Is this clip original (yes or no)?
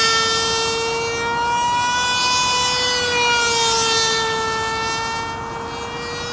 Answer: yes